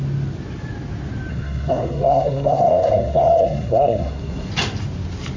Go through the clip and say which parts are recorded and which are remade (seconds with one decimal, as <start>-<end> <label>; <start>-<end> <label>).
0.0-1.3 recorded; 1.3-4.5 remade; 4.5-5.4 recorded